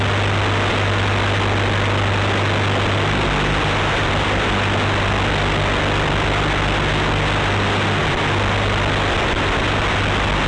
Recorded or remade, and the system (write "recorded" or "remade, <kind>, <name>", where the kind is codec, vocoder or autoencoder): recorded